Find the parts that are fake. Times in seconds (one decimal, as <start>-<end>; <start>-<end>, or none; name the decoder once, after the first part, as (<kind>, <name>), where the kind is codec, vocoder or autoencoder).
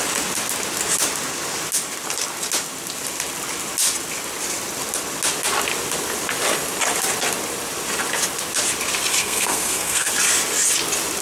9.2-10.1 (codec, SNAC)